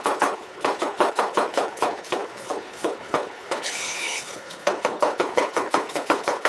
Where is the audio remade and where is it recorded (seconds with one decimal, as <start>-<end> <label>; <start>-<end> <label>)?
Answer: 0.0-6.5 remade